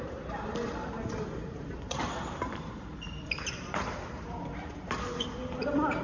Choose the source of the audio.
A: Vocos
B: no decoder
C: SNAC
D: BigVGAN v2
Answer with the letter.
D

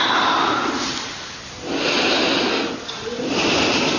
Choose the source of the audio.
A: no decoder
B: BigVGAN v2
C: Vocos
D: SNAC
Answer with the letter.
A